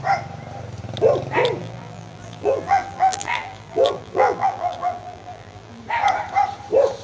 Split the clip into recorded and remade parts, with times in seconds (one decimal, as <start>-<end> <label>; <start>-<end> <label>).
0.0-1.6 recorded; 1.6-5.8 remade; 5.8-7.0 recorded